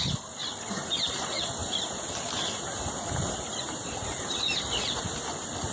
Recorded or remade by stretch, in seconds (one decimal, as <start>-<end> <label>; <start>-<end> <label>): 0.0-5.7 remade